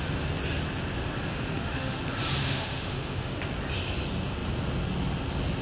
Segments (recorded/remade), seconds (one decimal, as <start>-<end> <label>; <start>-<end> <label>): 0.0-1.3 recorded; 1.3-2.0 remade; 2.0-2.4 recorded; 2.4-3.4 remade; 3.4-5.6 recorded